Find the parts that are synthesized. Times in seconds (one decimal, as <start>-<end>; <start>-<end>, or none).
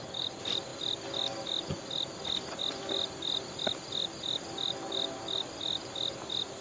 none